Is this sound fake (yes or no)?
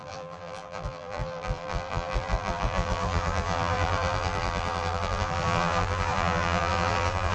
yes